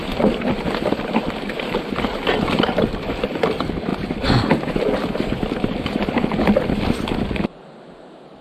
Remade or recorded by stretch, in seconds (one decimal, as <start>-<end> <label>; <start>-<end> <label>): 0.0-0.5 remade; 0.5-1.2 recorded; 1.2-2.9 remade; 2.9-8.4 recorded